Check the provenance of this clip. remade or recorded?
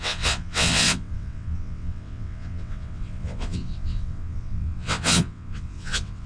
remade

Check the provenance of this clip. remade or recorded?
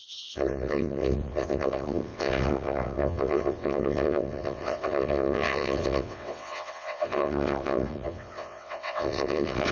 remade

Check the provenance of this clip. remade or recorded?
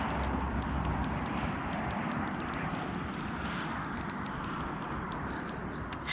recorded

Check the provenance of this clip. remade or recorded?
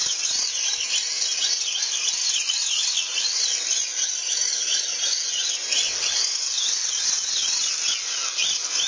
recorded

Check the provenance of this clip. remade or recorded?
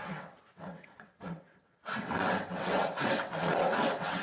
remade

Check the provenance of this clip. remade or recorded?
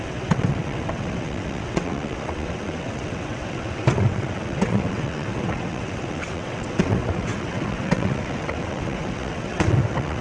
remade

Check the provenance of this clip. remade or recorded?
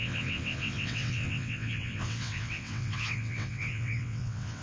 remade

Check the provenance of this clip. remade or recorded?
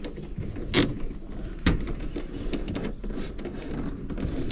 recorded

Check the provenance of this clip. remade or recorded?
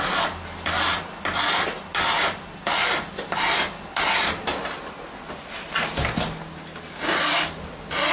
recorded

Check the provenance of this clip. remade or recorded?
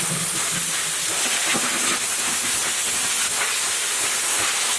recorded